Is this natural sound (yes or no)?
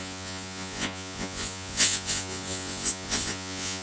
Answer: no